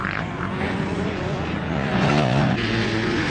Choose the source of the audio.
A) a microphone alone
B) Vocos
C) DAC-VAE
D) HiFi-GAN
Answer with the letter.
B